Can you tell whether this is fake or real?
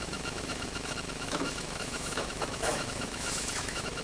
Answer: fake